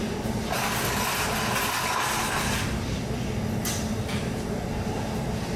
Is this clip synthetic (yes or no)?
no